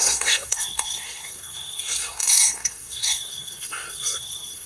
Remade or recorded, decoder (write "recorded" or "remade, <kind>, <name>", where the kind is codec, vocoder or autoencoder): remade, codec, SNAC